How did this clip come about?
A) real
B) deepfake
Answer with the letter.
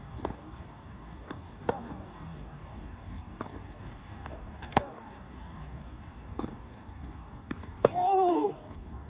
B